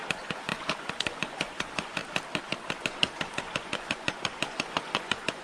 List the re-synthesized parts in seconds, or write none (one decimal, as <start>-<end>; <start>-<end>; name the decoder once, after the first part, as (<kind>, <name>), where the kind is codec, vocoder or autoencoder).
0.0-2.0 (vocoder, Vocos); 2.8-5.4